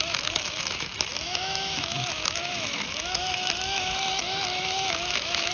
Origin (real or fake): fake